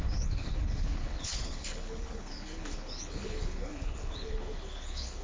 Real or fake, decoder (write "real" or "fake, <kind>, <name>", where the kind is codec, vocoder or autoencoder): fake, codec, HILCodec